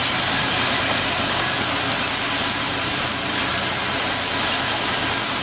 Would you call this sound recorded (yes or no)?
yes